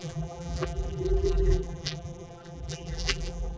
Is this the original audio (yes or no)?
no